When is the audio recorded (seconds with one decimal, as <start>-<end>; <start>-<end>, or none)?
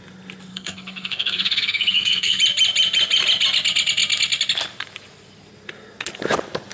0.0-0.5; 2.4-6.7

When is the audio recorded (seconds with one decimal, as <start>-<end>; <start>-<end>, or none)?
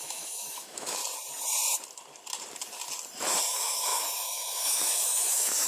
1.0-3.5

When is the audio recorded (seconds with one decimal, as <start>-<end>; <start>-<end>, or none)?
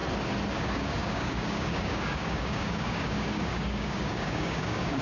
0.0-0.5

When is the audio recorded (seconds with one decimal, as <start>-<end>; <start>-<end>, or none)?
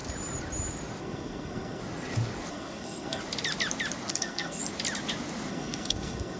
0.0-1.0; 1.8-2.5; 3.2-4.1; 4.6-5.5